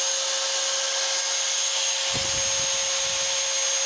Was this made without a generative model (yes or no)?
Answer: yes